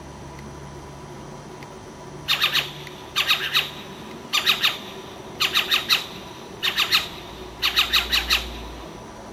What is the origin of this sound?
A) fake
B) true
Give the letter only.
B